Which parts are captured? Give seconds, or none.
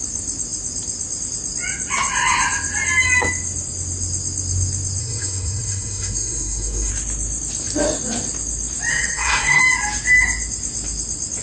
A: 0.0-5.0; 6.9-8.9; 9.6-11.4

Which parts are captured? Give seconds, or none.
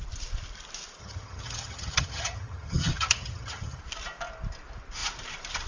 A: 0.0-1.0; 3.8-5.7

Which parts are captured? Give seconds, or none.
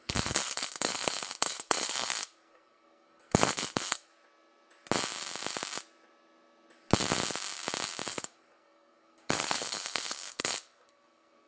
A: 4.1-8.1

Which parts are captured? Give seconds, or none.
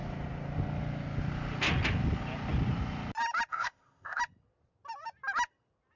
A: 0.0-3.5; 4.2-6.0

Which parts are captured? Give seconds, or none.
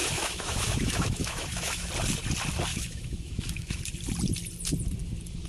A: 1.9-2.7; 3.8-5.5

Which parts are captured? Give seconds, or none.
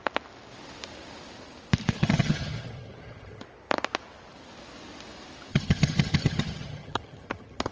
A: 0.0-2.0; 3.4-5.5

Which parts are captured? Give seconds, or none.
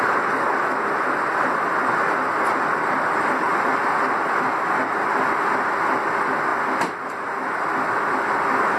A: 0.0-8.8